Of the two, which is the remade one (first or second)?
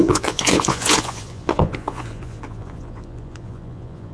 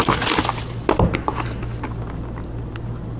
first